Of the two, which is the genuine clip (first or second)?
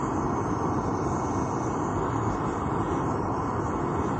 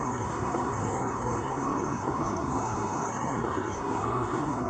first